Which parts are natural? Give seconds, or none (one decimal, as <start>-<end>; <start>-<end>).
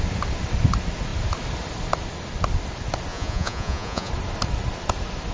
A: 0.0-3.1; 4.1-5.3